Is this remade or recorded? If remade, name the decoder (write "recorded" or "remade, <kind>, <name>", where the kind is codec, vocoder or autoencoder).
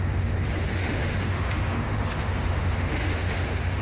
remade, autoencoder, DAC-VAE